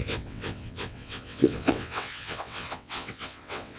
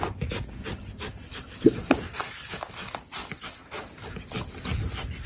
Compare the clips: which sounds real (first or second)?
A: second